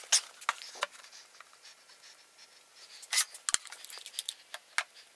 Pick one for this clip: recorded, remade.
recorded